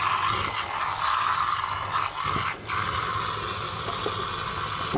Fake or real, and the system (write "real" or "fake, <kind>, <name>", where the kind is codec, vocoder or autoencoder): real